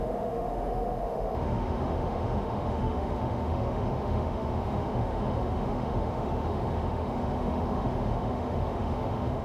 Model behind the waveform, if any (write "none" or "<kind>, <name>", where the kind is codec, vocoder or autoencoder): autoencoder, DAC-VAE